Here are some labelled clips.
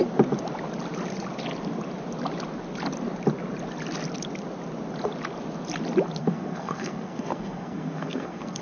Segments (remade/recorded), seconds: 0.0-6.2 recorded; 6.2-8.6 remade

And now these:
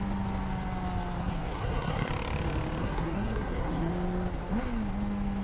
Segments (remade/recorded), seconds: 0.0-1.2 recorded; 1.2-2.1 remade; 2.1-2.8 recorded; 2.8-3.9 remade; 3.9-5.4 recorded

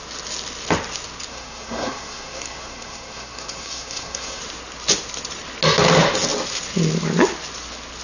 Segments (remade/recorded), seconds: 0.0-1.3 recorded; 1.3-4.4 remade; 4.4-8.0 recorded

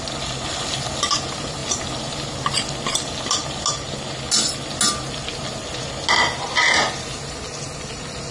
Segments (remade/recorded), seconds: 0.0-8.3 recorded

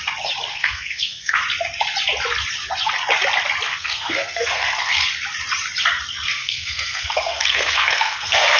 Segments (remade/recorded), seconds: 0.0-0.5 recorded; 0.5-1.4 remade; 1.4-3.7 recorded; 3.7-5.0 remade; 5.0-6.4 recorded; 6.4-8.6 remade

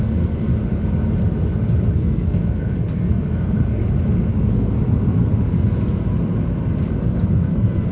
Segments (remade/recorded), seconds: 0.0-0.5 remade; 0.5-1.9 recorded; 1.9-3.8 remade; 3.8-4.3 recorded; 4.3-4.8 remade; 4.8-6.8 recorded; 6.8-7.9 remade

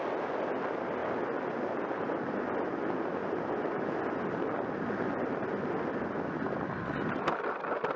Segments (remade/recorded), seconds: 0.0-8.0 recorded

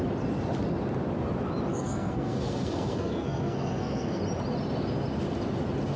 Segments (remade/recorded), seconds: 0.0-1.7 recorded; 1.7-4.2 remade; 4.2-6.0 recorded